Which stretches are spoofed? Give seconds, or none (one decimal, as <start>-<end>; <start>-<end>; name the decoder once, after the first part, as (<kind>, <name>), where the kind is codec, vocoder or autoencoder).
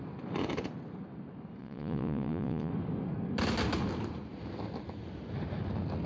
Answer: 1.6-2.7 (vocoder, Vocos)